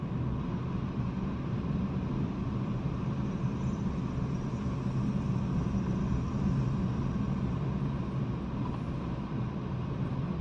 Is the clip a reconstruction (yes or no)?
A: no